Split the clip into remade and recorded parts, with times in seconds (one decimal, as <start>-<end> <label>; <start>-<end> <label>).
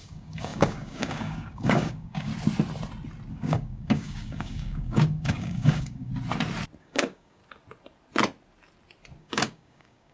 0.0-2.3 remade; 2.3-3.3 recorded; 3.3-6.1 remade; 6.1-6.8 recorded; 6.8-7.4 remade; 7.4-9.2 recorded; 9.2-10.1 remade